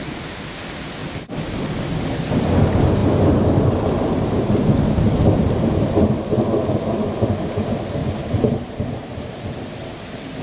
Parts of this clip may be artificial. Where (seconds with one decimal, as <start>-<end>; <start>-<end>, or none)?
3.0-4.4; 8.0-9.2